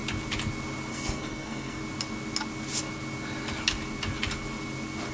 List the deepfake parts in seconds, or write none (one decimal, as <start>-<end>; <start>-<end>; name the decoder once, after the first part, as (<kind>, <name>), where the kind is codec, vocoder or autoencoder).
0.9-1.8 (codec, SNAC)